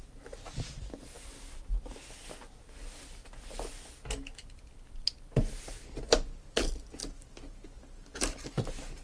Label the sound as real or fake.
real